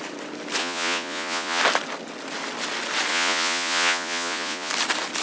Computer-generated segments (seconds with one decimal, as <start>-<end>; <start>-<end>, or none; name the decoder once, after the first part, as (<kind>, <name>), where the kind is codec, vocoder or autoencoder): 0.6-1.6 (vocoder, Vocos); 3.1-4.7